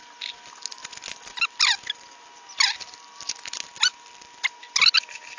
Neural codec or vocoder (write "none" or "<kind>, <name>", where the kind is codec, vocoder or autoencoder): none